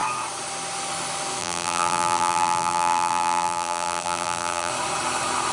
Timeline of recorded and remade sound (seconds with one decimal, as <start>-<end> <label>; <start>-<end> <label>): 0.0-1.4 recorded; 1.4-4.7 remade; 4.7-5.5 recorded